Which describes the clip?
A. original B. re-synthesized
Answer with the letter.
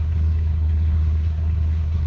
B